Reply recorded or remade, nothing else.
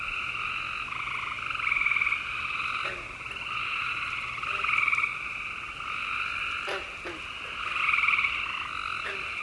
recorded